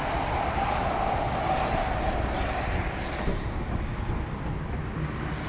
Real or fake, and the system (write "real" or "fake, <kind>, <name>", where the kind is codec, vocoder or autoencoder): real